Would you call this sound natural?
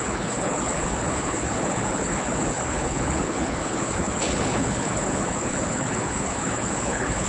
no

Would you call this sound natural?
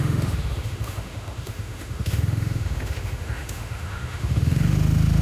no